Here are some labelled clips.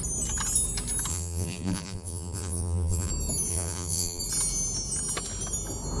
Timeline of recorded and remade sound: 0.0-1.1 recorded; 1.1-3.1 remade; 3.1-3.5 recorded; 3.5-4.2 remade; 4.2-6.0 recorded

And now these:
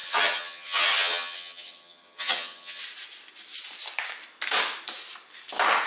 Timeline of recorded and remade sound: 0.0-2.8 remade; 2.8-5.9 recorded

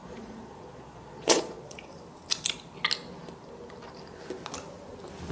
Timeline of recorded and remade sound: 0.0-1.9 remade; 1.9-5.3 recorded

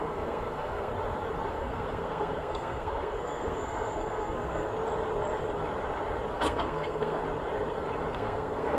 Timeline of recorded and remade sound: 0.0-0.9 remade; 0.9-1.5 recorded; 1.5-4.7 remade; 4.7-6.3 recorded; 6.3-7.2 remade; 7.2-8.1 recorded; 8.1-8.8 remade

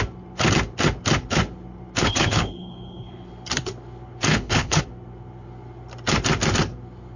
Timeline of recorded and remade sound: 0.0-2.0 recorded; 2.0-3.3 remade; 3.3-4.3 recorded; 4.3-4.8 remade; 4.8-7.2 recorded

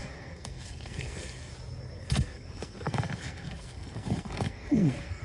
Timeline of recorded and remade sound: 0.0-1.5 remade; 1.5-2.0 recorded; 2.0-5.2 remade

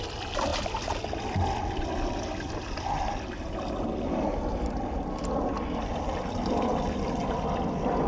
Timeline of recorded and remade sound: 0.0-8.1 recorded

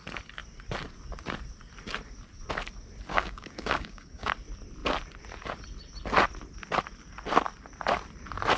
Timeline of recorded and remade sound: 0.0-3.1 recorded; 3.1-4.3 remade; 4.3-8.6 recorded